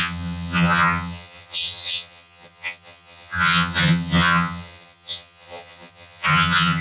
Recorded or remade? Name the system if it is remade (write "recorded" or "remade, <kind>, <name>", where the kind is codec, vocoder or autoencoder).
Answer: remade, vocoder, HiFi-GAN